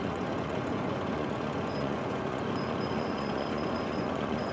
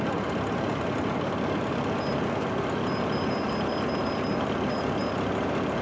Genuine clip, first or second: second